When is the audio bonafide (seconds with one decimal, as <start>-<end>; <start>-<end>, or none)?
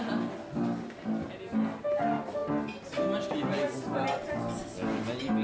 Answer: 0.0-5.4